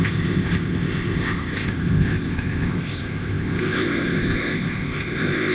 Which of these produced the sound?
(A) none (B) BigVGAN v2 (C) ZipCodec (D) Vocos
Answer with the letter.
C